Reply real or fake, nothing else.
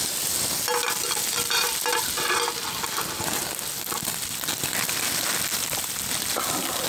real